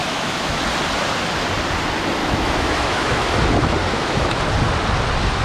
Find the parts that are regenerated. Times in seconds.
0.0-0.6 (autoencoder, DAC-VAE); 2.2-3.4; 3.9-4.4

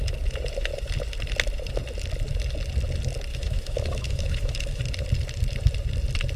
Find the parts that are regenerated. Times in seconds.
3.3-4.8 (autoencoder, DAC-VAE)

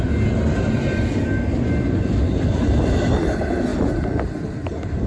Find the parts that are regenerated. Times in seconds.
none

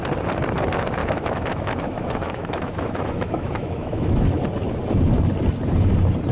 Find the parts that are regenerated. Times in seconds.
1.0-4.4 (autoencoder, DAC-VAE)